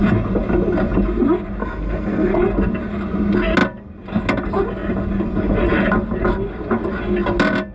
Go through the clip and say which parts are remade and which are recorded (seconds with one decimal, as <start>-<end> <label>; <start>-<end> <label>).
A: 0.0-1.6 recorded; 1.6-2.4 remade; 2.4-7.7 recorded